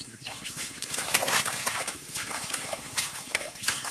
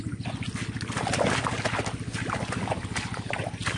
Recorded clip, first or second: second